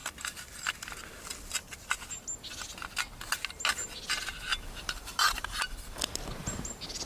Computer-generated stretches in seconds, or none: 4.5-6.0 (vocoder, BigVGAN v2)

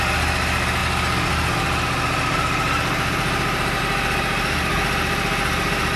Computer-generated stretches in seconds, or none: none

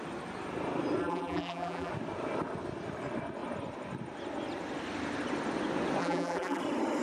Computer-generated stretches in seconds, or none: 1.0-1.9 (vocoder, BigVGAN v2); 6.0-6.6

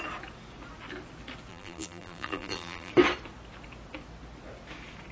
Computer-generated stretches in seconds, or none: 1.5-2.9 (vocoder, BigVGAN v2)

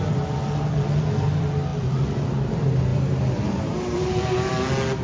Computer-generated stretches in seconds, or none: 2.9-4.5 (vocoder, BigVGAN v2)

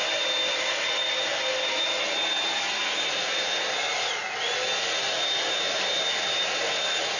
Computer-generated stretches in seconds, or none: 0.0-1.2 (vocoder, BigVGAN v2)